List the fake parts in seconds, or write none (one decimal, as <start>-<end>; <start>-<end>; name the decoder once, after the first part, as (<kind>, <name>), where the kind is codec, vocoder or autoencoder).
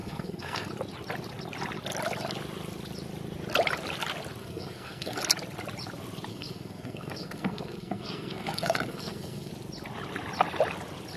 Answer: 0.0-0.7 (codec, SNAC); 4.4-5.2; 6.3-9.5